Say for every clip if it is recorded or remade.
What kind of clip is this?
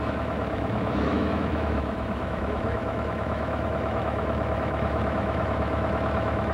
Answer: remade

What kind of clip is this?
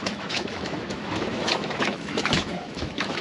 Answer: remade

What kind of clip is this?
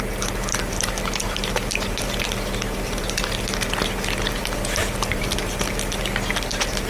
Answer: recorded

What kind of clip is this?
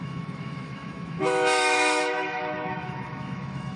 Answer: remade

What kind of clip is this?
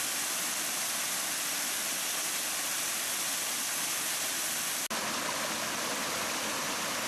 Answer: recorded